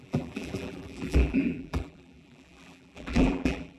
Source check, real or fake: fake